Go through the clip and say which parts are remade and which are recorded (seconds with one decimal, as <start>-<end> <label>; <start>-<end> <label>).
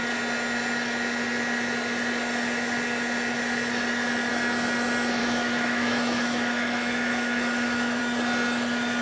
0.0-5.2 recorded; 5.2-8.0 remade; 8.0-9.0 recorded